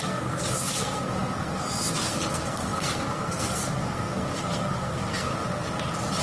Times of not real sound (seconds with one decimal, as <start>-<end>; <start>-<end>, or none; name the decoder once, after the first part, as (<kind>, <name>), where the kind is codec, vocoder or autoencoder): 0.0-5.3 (codec, SNAC)